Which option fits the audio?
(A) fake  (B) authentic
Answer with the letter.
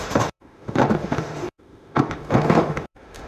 A